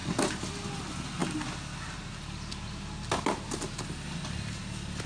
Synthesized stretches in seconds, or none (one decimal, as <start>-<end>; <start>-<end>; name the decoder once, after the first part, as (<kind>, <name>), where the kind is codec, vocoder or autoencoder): none

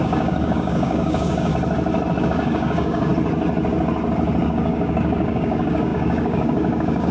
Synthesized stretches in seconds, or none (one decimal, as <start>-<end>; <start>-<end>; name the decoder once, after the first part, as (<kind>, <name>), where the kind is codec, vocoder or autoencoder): 0.0-1.5 (codec, DAC); 2.2-3.1; 4.4-7.1